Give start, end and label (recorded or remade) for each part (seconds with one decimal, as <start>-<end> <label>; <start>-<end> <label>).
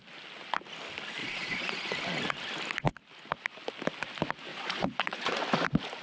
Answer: 0.0-1.2 recorded; 1.2-1.9 remade; 1.9-4.5 recorded; 4.5-5.4 remade; 5.4-6.0 recorded